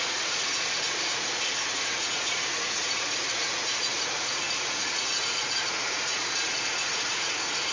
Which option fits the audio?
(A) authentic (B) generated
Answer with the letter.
B